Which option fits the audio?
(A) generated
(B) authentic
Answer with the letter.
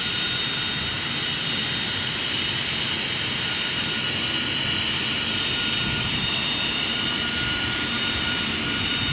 A